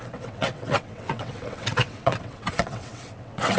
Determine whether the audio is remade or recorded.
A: remade